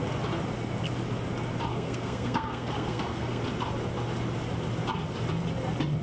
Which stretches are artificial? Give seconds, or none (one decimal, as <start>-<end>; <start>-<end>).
1.7-3.4